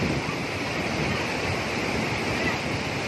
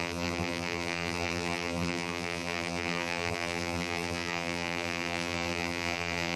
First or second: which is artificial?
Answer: second